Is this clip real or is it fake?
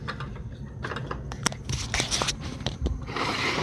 fake